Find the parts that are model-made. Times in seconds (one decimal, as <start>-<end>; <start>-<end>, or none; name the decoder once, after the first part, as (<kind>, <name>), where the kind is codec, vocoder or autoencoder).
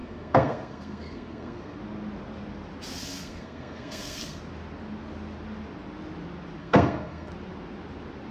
0.0-1.8 (codec, SNAC); 3.0-4.4; 6.6-7.3